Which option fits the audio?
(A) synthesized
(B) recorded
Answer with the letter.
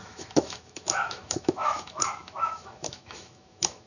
A